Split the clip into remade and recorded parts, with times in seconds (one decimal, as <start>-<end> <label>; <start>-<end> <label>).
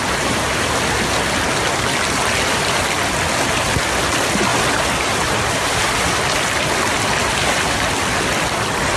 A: 0.0-9.0 recorded